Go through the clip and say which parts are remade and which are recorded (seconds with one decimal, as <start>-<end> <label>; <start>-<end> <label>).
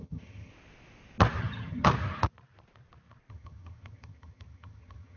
0.0-0.5 remade; 0.5-1.4 recorded; 1.4-1.9 remade; 1.9-3.3 recorded; 3.3-5.2 remade